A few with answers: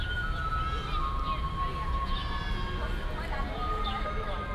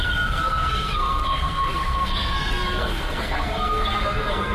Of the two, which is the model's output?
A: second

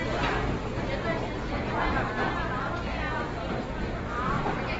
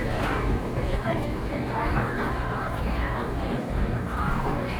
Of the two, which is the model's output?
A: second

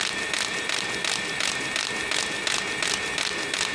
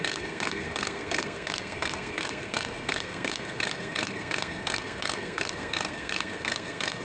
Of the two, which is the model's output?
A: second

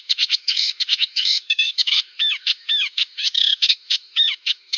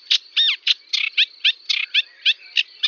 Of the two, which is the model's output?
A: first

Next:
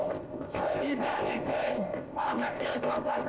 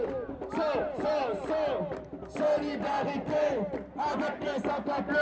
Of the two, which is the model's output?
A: first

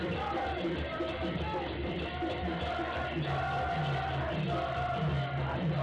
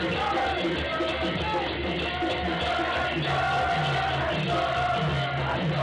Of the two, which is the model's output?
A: first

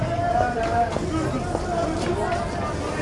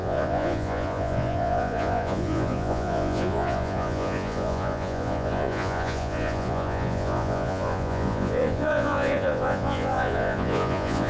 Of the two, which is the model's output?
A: second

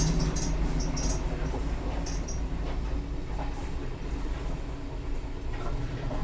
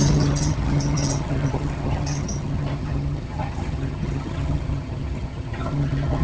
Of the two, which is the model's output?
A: second